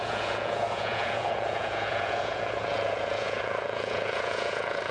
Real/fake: fake